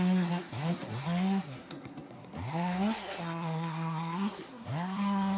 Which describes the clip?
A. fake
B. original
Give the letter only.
A